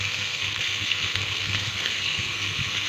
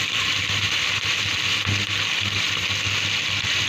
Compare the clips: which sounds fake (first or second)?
first